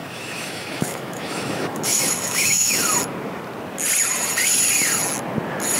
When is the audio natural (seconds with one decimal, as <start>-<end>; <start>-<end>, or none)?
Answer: 2.8-5.8